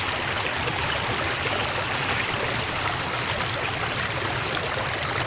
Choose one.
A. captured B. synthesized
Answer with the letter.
A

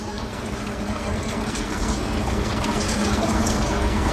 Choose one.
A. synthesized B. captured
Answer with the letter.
A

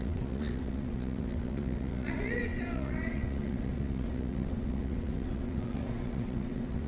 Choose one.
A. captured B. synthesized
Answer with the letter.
B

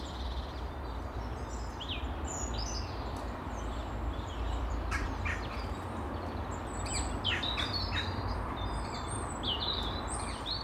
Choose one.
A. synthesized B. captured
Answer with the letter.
A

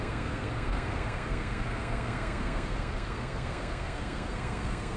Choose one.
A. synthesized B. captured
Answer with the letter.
A